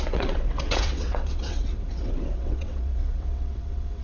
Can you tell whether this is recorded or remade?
remade